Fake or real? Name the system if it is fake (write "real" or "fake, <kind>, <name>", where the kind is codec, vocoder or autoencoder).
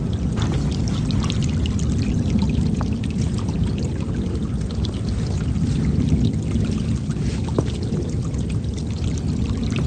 real